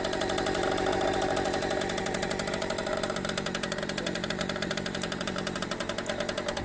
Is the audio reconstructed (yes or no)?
yes